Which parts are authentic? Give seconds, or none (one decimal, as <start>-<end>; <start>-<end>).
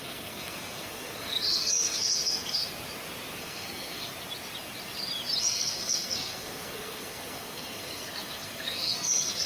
2.7-3.4; 4.1-5.4